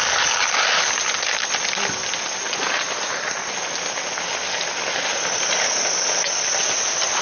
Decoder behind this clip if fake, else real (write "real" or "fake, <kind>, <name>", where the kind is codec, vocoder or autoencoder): real